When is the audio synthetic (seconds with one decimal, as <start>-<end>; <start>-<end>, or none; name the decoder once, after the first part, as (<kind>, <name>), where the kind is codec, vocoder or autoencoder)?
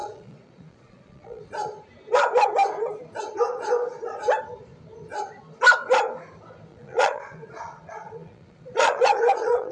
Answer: 0.0-1.4 (vocoder, Vocos); 6.7-9.7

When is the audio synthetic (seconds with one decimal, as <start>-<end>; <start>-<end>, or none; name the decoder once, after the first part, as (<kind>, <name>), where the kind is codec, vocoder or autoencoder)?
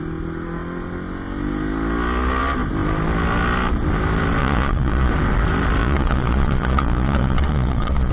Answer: 4.4-5.1 (vocoder, Vocos); 5.8-8.1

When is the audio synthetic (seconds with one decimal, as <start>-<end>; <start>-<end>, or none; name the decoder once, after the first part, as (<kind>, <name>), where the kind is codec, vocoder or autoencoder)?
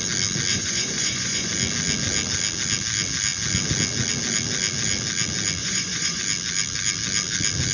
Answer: 0.5-1.5 (vocoder, Vocos); 5.6-6.2